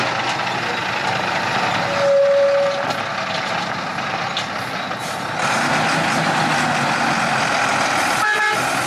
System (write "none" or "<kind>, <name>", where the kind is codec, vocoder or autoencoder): none